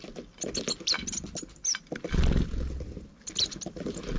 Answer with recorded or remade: remade